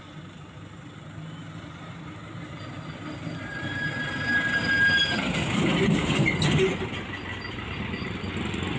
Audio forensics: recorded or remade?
recorded